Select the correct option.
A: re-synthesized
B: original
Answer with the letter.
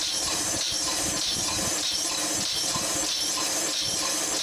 B